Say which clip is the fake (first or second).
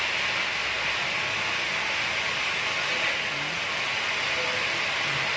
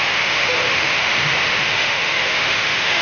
second